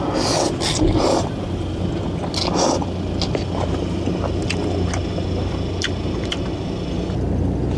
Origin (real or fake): real